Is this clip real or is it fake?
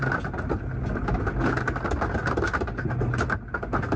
real